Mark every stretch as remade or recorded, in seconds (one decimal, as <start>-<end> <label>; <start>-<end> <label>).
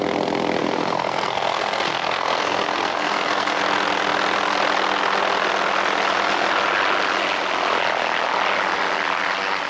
0.0-0.6 recorded; 0.6-3.6 remade; 3.6-9.7 recorded